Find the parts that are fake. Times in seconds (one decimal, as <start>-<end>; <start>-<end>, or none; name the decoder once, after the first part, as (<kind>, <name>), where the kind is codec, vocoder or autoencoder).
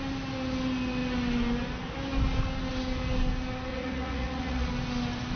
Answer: 3.7-4.7 (vocoder, Vocos)